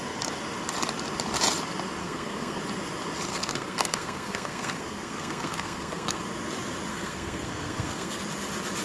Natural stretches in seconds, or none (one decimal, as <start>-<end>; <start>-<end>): 0.0-2.0; 2.6-3.3; 6.2-6.9; 8.2-8.8